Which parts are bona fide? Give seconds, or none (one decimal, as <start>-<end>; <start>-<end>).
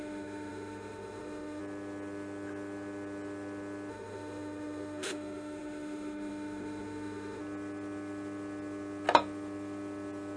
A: 1.6-3.9; 7.4-10.4